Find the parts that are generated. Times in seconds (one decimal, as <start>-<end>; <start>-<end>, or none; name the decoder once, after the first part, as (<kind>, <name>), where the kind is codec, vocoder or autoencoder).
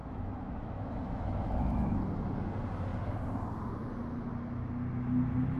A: 0.0-2.0 (autoencoder, DAC-VAE)